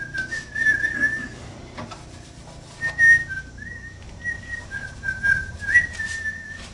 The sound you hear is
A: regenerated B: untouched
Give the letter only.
B